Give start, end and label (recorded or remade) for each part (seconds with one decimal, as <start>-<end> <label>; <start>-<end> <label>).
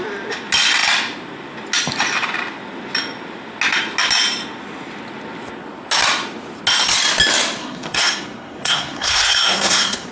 0.0-7.6 recorded; 7.6-10.1 remade